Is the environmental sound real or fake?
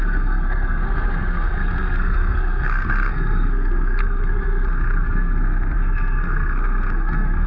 fake